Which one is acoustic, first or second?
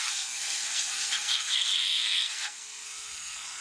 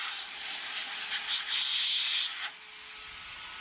second